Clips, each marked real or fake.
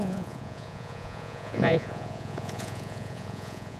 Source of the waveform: fake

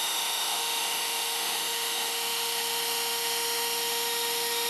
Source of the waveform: fake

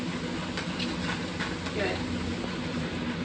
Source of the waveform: real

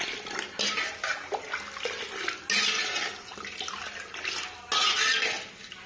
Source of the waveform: real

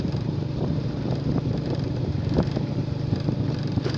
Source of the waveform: fake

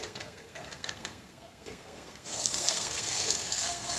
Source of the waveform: fake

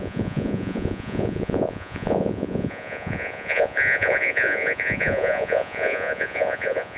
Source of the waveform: fake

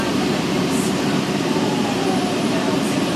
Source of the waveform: fake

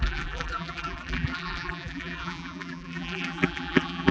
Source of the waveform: fake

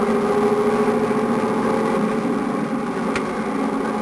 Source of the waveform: real